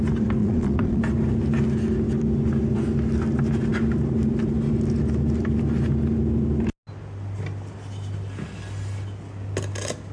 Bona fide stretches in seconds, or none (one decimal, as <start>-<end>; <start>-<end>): 0.0-0.4; 1.0-10.1